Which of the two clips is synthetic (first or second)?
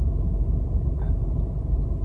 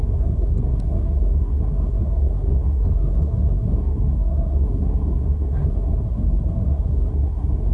second